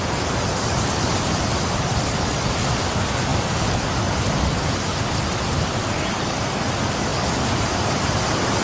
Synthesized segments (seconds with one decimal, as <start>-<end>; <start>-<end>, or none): none